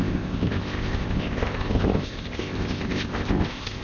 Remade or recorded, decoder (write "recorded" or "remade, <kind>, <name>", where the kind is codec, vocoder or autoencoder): remade, codec, ZipCodec